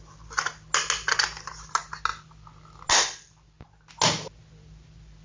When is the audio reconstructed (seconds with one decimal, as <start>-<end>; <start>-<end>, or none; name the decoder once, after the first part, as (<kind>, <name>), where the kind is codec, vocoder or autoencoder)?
none